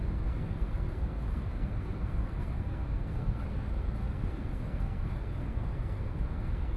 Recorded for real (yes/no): no